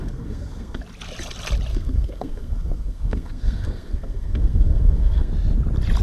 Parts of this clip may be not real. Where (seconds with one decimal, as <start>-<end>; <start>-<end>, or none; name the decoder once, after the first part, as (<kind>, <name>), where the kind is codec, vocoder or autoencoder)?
0.0-0.8 (codec, SNAC); 1.7-5.3